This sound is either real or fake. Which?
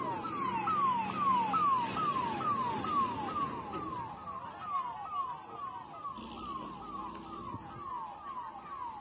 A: real